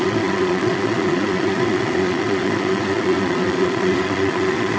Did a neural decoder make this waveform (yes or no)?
yes